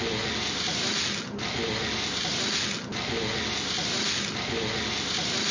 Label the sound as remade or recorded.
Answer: recorded